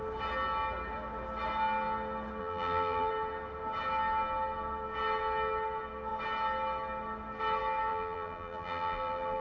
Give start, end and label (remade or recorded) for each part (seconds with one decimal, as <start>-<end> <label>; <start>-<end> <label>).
0.0-2.4 recorded; 2.4-3.1 remade; 3.1-7.9 recorded; 7.9-9.4 remade